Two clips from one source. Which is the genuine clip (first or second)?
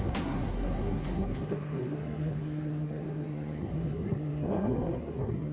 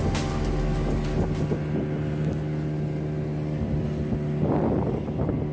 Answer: second